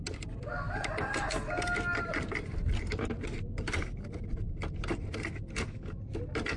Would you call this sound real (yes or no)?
yes